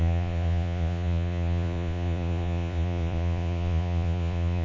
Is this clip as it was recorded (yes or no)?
no